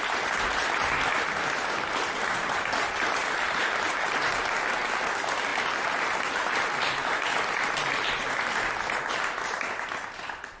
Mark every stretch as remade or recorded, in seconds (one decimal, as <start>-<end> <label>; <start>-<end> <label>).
0.0-10.6 remade